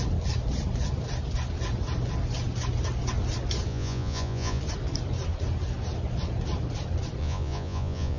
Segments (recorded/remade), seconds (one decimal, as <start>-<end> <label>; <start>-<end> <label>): 0.0-3.7 recorded; 3.7-4.6 remade; 4.6-7.2 recorded; 7.2-8.2 remade